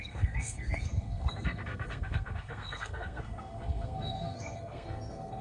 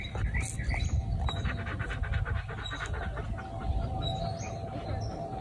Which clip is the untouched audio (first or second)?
second